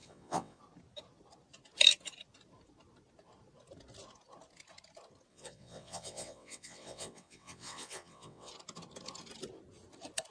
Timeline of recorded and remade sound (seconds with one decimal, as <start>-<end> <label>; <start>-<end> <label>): 0.0-0.6 remade; 0.6-5.3 recorded; 5.3-8.5 remade; 8.5-10.3 recorded